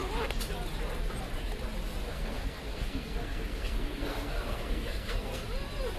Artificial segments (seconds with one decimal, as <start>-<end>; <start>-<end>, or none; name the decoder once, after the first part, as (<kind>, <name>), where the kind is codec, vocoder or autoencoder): 2.1-5.4 (codec, SNAC)

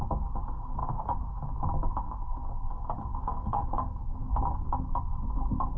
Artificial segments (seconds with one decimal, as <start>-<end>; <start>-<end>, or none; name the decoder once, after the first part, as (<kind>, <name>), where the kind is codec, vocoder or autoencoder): 0.8-2.7 (autoencoder, DAC-VAE); 3.1-5.1